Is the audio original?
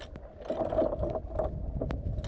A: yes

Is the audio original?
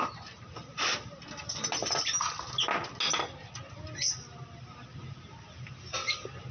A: yes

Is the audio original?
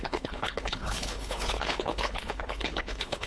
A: no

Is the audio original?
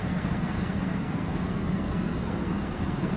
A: no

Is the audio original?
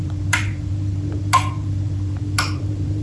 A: no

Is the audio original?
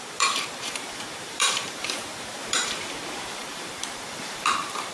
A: no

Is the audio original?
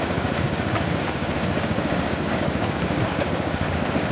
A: no